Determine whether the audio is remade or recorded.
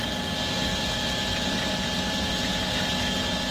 recorded